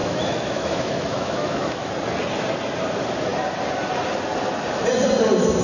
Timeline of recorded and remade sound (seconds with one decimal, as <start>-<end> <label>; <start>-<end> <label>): 0.0-1.9 remade; 1.9-5.6 recorded